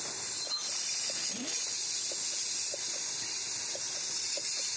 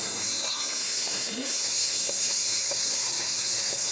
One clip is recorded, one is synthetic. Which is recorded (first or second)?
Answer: first